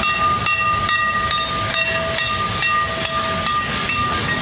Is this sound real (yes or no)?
yes